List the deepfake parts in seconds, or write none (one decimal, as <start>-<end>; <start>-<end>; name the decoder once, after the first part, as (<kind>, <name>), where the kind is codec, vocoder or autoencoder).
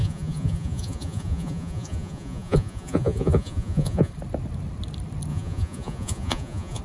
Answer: 0.0-4.1 (vocoder, Vocos); 5.3-6.8